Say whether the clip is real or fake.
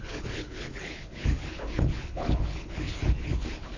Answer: fake